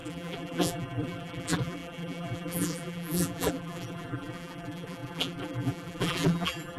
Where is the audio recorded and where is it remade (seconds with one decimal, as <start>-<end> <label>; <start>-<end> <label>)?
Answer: 0.0-6.8 remade